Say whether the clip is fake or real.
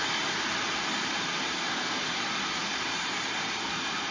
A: fake